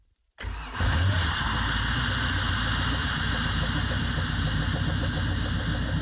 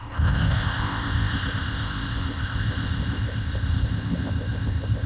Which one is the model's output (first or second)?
second